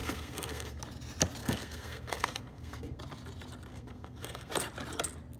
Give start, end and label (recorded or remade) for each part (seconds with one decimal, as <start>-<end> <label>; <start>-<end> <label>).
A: 0.0-0.8 remade; 0.8-1.4 recorded; 1.4-3.0 remade; 3.0-3.7 recorded; 3.7-4.5 remade; 4.5-5.4 recorded